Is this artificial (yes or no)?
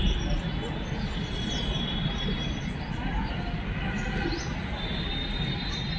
no